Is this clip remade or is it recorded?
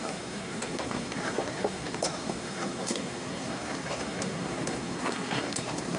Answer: remade